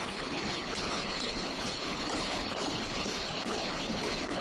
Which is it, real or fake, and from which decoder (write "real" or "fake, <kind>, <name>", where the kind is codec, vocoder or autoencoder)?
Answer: fake, codec, HILCodec